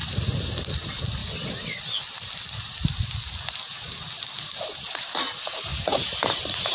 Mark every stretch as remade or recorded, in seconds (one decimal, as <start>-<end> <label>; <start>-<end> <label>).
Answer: 0.0-1.2 remade; 1.2-3.5 recorded; 3.5-6.7 remade